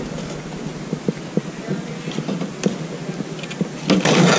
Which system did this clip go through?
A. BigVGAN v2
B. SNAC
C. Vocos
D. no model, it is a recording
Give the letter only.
D